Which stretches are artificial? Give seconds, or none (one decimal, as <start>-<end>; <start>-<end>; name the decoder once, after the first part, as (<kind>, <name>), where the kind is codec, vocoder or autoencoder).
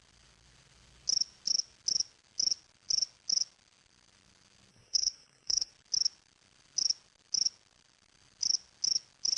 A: 4.7-5.7 (codec, SNAC)